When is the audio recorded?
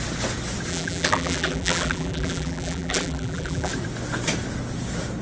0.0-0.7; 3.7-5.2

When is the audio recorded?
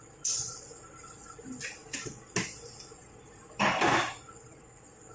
0.0-5.1